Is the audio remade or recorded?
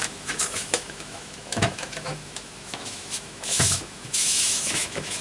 remade